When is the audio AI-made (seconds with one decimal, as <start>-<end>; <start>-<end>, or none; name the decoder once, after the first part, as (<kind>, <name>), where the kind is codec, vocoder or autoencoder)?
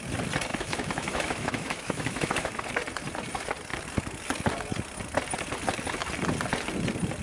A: 0.5-2.5 (autoencoder, DAC-VAE)